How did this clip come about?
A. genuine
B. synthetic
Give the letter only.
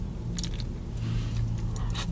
A